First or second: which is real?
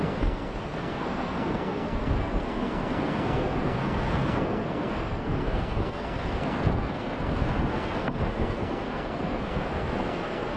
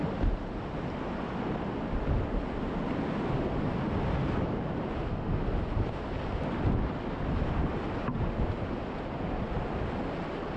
second